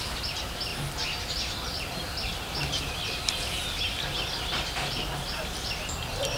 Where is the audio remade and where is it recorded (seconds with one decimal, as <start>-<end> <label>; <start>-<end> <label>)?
0.0-0.7 remade; 0.7-2.8 recorded; 2.8-6.4 remade